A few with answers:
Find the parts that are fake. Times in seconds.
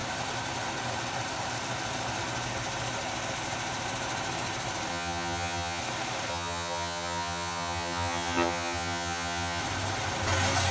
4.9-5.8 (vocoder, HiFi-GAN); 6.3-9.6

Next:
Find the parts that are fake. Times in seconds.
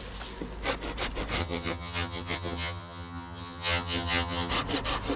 1.4-4.5 (vocoder, HiFi-GAN)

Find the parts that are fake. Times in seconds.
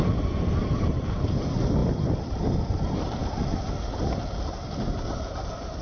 none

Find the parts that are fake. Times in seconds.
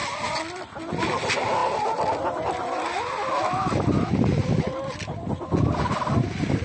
none